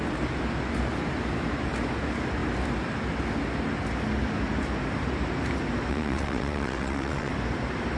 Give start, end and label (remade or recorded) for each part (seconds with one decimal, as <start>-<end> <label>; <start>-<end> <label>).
0.0-5.9 recorded; 5.9-7.3 remade; 7.3-8.0 recorded